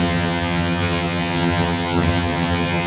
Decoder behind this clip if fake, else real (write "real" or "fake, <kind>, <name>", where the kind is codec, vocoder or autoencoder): fake, vocoder, HiFi-GAN